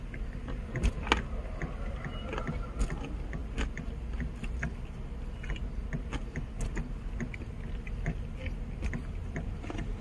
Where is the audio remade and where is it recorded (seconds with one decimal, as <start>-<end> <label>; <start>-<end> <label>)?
0.0-10.0 recorded